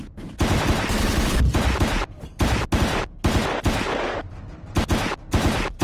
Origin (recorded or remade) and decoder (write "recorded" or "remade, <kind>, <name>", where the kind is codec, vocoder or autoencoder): recorded